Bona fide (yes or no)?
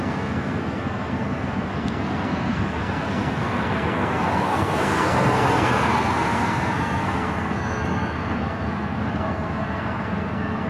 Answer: no